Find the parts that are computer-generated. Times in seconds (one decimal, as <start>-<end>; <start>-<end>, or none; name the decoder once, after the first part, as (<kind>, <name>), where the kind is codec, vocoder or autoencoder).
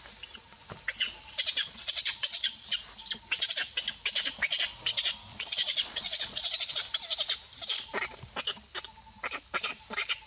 1.6-2.5 (vocoder, Vocos); 5.3-6.7